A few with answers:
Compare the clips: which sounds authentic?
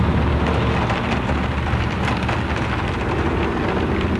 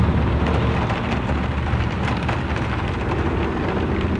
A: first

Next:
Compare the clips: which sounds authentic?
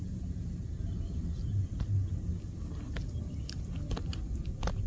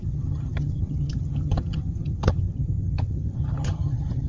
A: first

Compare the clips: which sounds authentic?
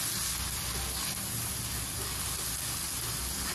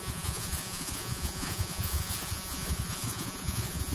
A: first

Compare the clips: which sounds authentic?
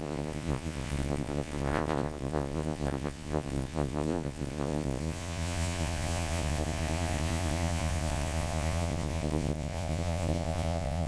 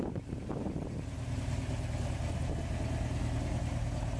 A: second